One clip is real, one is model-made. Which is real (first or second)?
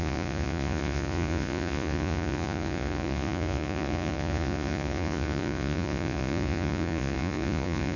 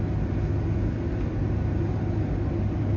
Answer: second